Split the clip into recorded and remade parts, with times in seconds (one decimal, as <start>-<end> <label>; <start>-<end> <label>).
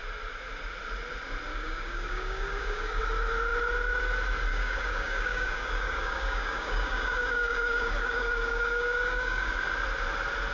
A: 0.0-1.5 recorded; 1.5-3.0 remade; 3.0-4.5 recorded; 4.5-9.5 remade; 9.5-10.5 recorded